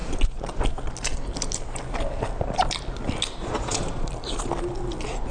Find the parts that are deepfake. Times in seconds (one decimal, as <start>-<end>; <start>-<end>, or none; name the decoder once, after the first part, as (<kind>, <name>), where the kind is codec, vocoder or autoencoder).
3.4-4.1 (vocoder, Vocos)

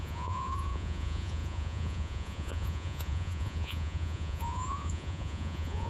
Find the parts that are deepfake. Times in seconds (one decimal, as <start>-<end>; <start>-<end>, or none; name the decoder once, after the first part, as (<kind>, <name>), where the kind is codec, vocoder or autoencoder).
0.0-5.9 (vocoder, Vocos)

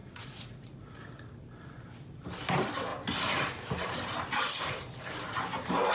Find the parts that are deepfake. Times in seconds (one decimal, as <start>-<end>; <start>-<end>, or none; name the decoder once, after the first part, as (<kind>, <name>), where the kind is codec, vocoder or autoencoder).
0.0-1.1 (vocoder, Vocos)

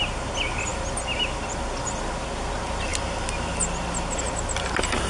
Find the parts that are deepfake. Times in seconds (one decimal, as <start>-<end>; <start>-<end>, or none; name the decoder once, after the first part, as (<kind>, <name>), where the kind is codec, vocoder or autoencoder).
none

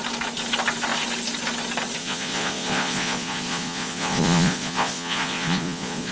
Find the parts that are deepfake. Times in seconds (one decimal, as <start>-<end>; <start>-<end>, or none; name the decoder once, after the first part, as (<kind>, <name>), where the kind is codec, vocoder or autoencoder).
2.0-6.1 (vocoder, Vocos)

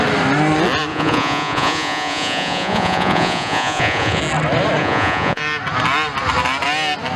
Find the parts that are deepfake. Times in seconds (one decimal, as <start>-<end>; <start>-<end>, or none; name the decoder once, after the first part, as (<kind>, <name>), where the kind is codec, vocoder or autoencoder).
0.9-4.2 (vocoder, Vocos); 4.8-5.4

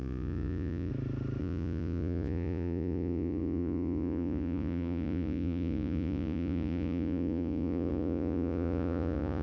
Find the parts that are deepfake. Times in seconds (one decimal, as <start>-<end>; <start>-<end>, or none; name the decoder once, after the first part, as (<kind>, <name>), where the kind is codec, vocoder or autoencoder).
0.0-0.9 (vocoder, Vocos); 1.4-9.4

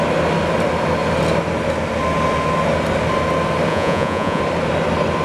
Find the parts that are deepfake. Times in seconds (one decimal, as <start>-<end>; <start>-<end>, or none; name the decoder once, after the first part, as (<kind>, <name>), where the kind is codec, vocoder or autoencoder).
3.7-4.4 (vocoder, Vocos)